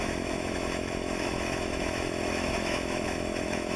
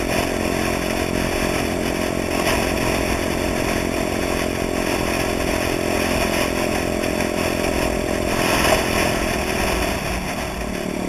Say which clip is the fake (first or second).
first